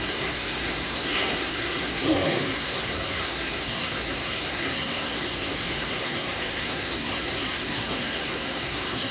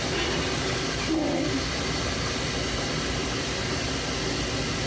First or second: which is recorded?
second